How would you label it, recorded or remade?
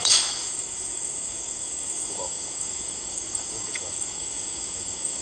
remade